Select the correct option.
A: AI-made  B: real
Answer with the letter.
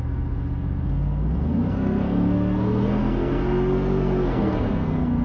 A